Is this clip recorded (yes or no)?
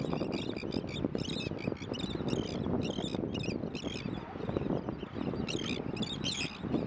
yes